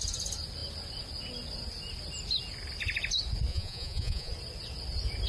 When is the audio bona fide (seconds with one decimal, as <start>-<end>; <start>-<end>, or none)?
0.0-3.5; 4.3-5.3